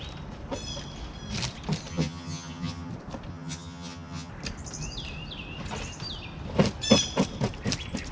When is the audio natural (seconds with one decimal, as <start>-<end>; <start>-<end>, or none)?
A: 0.0-1.9; 2.9-3.3; 4.3-8.1